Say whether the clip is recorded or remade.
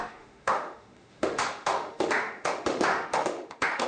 remade